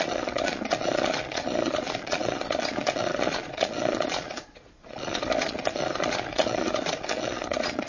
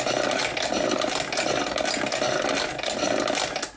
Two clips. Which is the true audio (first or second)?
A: second